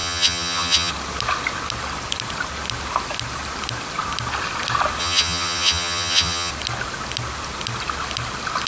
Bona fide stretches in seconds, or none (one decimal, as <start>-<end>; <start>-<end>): 0.9-5.0; 6.5-8.7